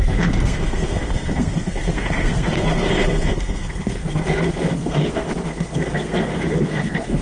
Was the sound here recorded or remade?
remade